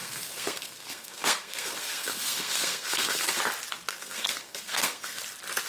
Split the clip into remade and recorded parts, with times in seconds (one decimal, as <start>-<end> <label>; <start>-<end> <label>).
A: 0.0-3.4 remade; 3.4-3.9 recorded; 3.9-5.2 remade; 5.2-5.7 recorded